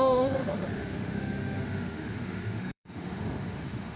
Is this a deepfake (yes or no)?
yes